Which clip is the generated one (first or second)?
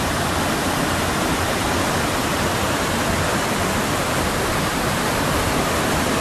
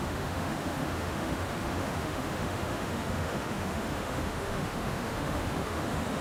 second